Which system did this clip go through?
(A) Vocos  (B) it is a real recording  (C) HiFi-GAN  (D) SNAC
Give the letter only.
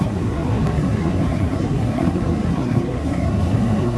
D